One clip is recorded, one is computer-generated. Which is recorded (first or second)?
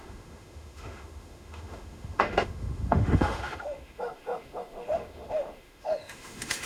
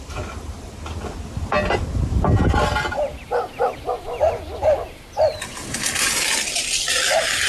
second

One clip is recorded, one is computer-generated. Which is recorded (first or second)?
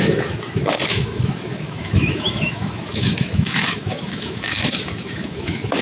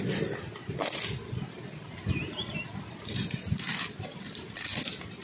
second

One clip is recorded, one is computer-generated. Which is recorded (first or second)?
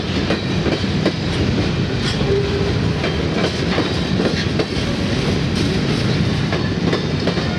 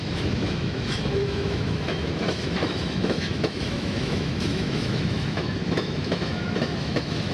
first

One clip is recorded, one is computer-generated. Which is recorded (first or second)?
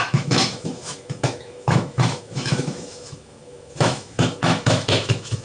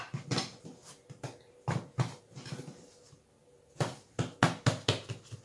second